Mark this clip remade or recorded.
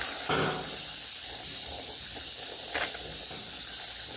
recorded